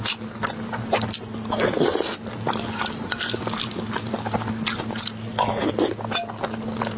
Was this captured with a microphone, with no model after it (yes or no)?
yes